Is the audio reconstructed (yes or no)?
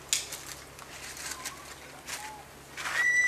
no